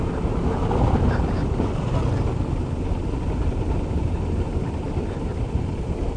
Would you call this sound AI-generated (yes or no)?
no